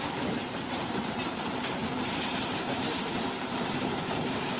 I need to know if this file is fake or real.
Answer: fake